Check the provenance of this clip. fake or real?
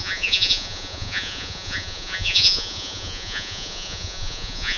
fake